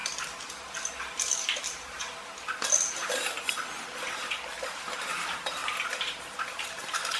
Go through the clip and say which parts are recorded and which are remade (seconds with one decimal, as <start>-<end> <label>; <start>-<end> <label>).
0.0-7.2 recorded